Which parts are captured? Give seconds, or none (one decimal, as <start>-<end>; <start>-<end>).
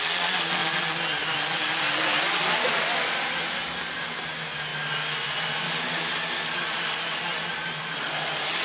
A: 0.0-8.6